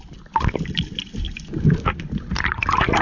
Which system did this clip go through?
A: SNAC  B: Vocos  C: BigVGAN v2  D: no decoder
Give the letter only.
D